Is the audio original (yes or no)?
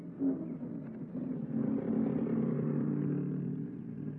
yes